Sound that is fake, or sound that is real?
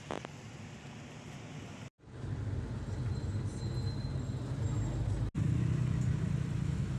real